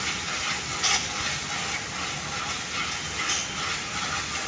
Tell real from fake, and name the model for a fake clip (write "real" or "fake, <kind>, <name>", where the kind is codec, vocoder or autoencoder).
real